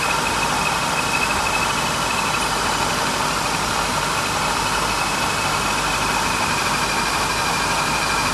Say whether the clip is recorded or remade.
recorded